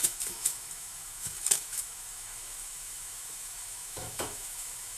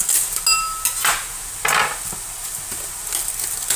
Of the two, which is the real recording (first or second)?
second